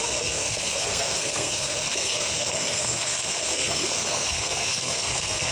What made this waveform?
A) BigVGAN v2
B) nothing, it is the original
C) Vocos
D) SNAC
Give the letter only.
D